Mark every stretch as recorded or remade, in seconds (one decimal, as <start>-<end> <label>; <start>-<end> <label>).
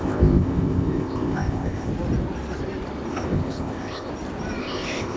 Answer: 0.0-1.9 remade; 1.9-3.1 recorded; 3.1-4.1 remade; 4.1-4.6 recorded; 4.6-5.2 remade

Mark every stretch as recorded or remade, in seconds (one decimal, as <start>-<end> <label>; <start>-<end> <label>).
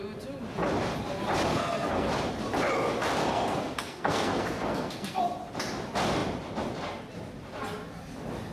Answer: 0.0-1.5 recorded; 1.5-2.1 remade; 2.1-3.2 recorded; 3.2-5.2 remade; 5.2-8.5 recorded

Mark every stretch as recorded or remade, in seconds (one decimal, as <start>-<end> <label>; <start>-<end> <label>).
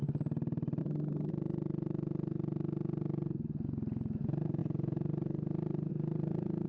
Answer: 0.0-0.8 recorded; 0.8-1.3 remade; 1.3-6.7 recorded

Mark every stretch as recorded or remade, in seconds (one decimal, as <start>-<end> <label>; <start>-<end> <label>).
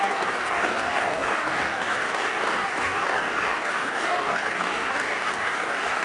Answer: 0.0-6.0 remade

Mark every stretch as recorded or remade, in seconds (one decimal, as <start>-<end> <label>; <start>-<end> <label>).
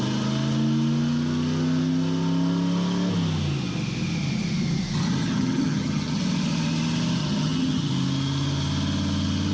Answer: 0.0-5.2 recorded; 5.2-6.2 remade; 6.2-7.2 recorded; 7.2-7.9 remade; 7.9-9.5 recorded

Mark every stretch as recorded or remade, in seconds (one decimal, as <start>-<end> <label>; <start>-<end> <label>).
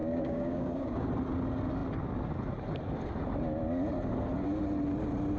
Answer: 0.0-1.1 remade; 1.1-5.4 recorded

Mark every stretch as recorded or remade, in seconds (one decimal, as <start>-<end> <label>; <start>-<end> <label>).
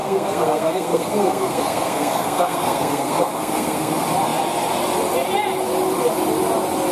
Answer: 0.0-3.9 remade; 3.9-6.9 recorded